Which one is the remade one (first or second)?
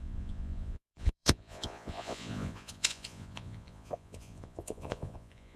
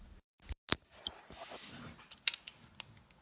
first